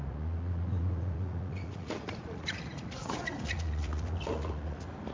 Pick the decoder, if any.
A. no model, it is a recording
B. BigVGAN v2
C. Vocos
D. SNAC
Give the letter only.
C